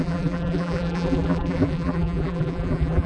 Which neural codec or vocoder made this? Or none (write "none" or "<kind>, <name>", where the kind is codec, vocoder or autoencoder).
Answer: vocoder, BigVGAN v2